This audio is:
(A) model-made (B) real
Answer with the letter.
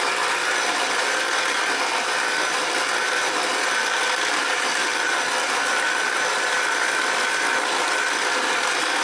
A